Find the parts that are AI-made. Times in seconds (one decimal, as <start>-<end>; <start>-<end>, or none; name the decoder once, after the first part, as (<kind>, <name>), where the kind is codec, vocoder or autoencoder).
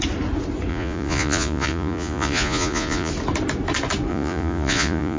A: 0.7-3.1 (vocoder, Vocos); 4.1-5.2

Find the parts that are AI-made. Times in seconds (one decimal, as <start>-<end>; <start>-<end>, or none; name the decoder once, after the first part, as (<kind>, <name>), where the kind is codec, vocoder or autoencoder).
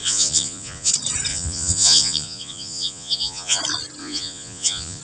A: 0.0-0.9 (vocoder, Vocos); 1.3-3.6; 4.0-5.0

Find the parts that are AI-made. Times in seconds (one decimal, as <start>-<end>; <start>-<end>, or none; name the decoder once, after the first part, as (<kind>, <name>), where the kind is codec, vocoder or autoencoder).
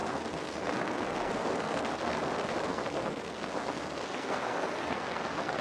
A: 0.0-2.2 (codec, SNAC); 2.7-5.6